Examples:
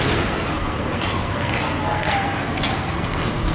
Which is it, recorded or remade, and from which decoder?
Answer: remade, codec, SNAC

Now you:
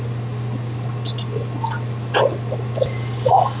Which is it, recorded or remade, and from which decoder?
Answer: recorded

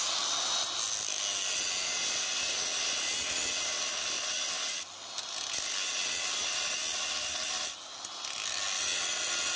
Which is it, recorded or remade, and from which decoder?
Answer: recorded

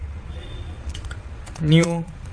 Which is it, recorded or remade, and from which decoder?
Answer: remade, vocoder, Vocos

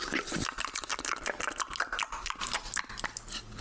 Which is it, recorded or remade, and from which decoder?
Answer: recorded